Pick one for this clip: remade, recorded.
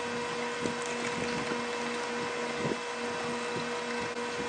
recorded